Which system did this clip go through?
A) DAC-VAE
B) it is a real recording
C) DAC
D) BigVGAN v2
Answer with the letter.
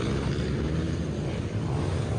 D